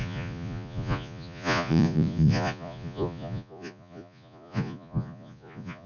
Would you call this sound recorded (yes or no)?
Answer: no